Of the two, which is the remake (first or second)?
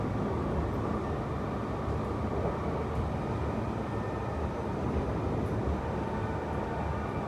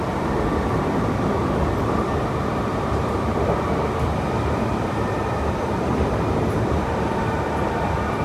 second